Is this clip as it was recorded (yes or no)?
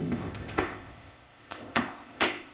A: no